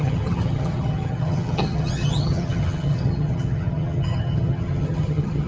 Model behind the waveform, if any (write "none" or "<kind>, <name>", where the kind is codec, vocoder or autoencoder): vocoder, HiFi-GAN